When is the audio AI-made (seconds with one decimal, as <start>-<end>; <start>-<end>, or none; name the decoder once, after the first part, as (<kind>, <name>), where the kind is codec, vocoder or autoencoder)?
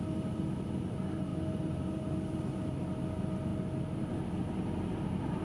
none